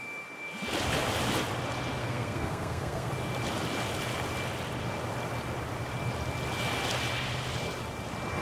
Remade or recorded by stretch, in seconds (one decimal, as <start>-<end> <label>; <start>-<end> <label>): 0.0-2.0 recorded; 2.0-3.1 remade; 3.1-8.4 recorded